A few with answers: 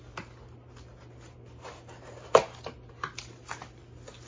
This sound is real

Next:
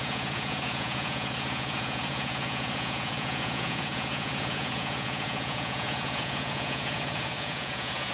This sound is fake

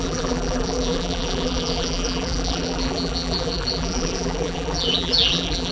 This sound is fake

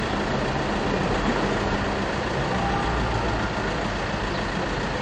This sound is real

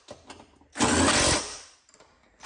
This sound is real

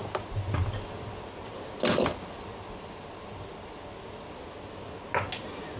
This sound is real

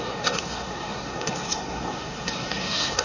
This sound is fake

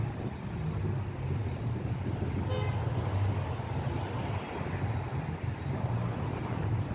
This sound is real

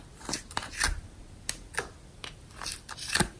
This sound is real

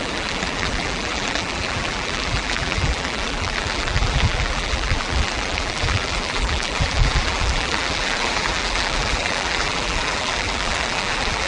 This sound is fake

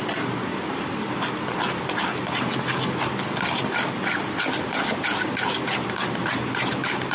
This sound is real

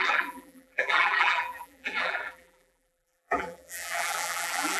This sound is fake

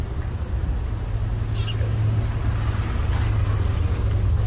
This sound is real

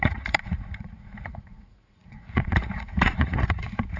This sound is fake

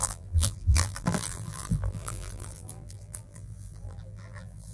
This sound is fake